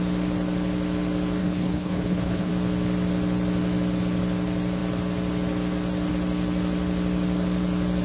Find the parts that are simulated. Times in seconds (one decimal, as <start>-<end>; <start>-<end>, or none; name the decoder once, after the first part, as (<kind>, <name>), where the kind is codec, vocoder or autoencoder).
1.4-2.5 (codec, HILCodec)